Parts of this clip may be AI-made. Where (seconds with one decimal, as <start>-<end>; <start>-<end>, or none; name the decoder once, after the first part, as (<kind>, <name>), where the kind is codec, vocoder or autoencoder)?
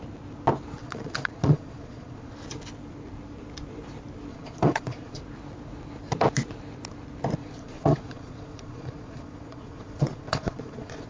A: 0.8-2.3 (vocoder, Vocos); 4.3-5.2; 7.4-11.1